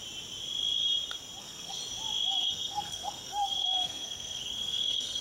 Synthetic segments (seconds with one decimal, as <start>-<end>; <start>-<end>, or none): 1.4-1.8; 2.3-5.2